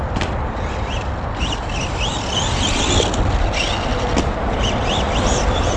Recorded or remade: remade